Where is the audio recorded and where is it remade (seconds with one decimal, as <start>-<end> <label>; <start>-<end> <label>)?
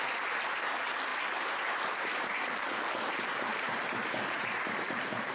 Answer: 0.0-5.3 remade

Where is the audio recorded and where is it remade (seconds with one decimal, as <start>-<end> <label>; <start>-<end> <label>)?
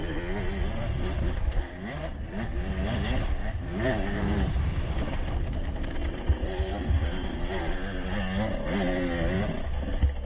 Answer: 0.0-3.4 recorded; 3.4-7.6 remade; 7.6-10.2 recorded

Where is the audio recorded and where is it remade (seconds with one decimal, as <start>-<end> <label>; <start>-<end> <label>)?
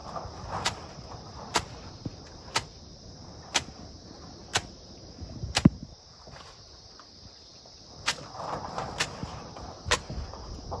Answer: 0.0-3.3 remade; 3.3-7.5 recorded; 7.5-9.5 remade; 9.5-10.8 recorded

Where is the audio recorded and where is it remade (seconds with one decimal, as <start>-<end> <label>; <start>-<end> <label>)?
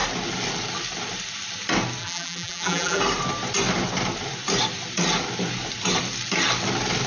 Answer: 0.0-2.0 recorded; 2.0-3.0 remade; 3.0-7.1 recorded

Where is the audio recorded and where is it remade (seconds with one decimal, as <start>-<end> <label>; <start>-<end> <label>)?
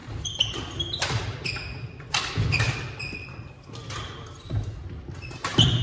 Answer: 0.0-3.5 remade; 3.5-5.8 recorded